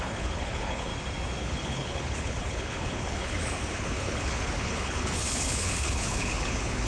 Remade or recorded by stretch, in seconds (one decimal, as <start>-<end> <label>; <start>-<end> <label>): 0.0-0.9 remade; 0.9-1.4 recorded; 1.4-6.9 remade